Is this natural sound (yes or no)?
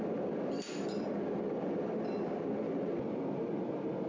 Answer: no